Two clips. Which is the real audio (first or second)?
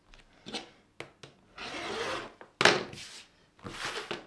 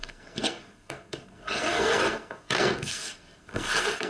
first